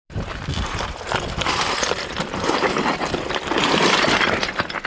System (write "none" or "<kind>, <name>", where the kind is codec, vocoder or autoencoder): vocoder, BigVGAN v2